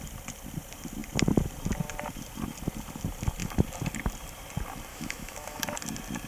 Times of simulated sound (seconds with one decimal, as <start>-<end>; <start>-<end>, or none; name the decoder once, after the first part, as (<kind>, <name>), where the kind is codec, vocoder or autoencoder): 4.9-5.6 (autoencoder, DAC-VAE)